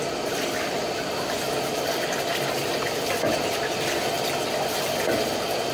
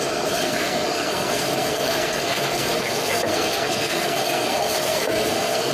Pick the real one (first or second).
first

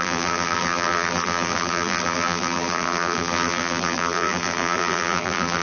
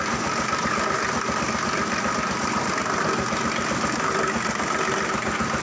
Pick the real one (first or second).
second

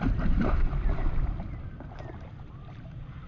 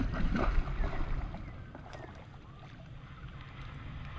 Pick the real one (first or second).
second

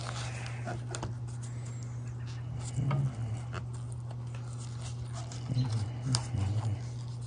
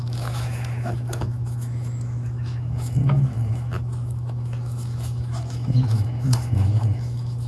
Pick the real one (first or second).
first